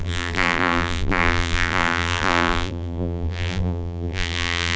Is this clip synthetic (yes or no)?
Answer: yes